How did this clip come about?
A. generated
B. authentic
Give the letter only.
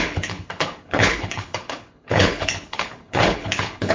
A